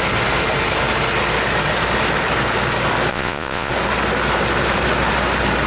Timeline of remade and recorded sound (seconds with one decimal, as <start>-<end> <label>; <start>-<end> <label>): 0.0-3.1 recorded; 3.1-3.7 remade; 3.7-5.7 recorded